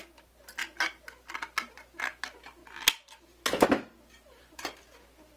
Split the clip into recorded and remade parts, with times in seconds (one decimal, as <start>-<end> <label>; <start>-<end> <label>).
0.0-5.4 recorded